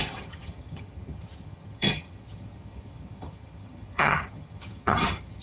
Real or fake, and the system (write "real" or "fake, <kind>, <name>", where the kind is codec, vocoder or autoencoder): fake, vocoder, HiFi-GAN